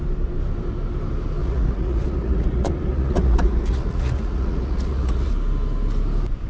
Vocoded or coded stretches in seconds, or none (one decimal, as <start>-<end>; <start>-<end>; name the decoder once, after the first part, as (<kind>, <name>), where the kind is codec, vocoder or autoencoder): 1.4-5.3 (vocoder, Vocos)